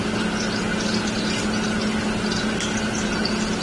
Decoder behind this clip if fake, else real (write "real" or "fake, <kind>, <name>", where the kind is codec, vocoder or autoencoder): real